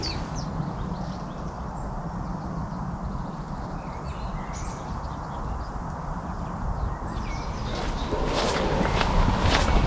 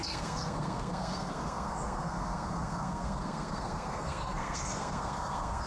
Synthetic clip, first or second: second